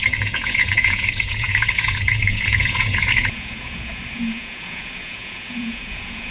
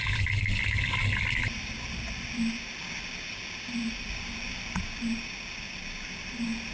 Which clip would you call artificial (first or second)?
first